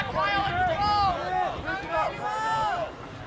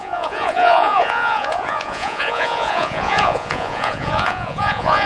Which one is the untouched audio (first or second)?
first